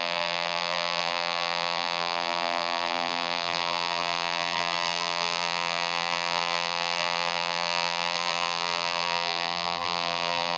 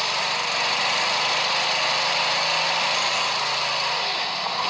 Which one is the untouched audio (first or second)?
second